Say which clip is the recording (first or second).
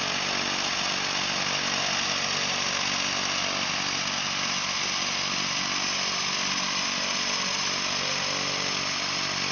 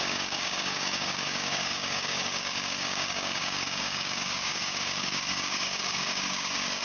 first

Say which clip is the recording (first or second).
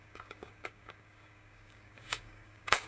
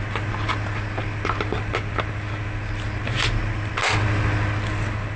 second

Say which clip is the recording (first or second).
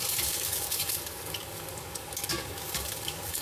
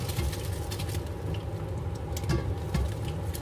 second